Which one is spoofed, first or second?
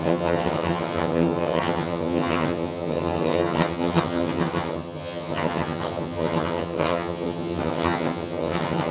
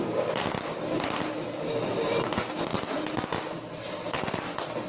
first